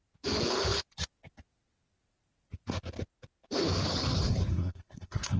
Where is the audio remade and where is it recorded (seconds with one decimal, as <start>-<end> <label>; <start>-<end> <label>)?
0.0-4.5 recorded; 4.5-5.4 remade